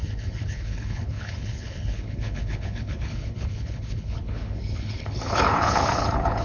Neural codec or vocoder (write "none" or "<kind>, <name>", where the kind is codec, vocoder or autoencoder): codec, HILCodec